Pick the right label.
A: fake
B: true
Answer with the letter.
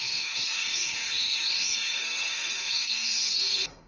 A